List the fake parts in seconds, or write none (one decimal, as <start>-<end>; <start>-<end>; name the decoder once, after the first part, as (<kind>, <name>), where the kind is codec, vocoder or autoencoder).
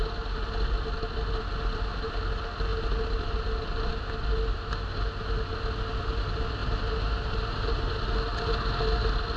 6.6-7.9 (vocoder, BigVGAN v2)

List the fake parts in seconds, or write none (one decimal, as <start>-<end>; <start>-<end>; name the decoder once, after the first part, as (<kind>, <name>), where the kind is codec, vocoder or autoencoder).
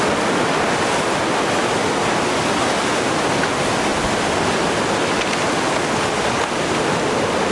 none